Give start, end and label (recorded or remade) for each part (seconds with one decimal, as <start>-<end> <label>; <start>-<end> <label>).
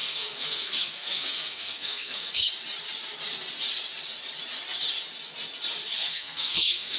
0.0-2.5 remade; 2.5-6.0 recorded; 6.0-7.0 remade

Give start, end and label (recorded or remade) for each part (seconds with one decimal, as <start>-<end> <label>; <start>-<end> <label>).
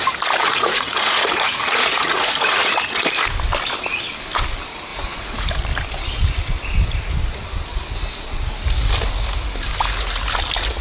0.0-0.5 recorded; 0.5-2.7 remade; 2.7-4.9 recorded; 4.9-5.5 remade; 5.5-10.8 recorded